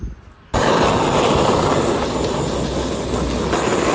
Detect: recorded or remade recorded